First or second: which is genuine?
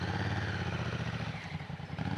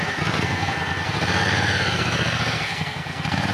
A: first